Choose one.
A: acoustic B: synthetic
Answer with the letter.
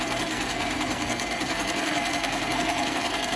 B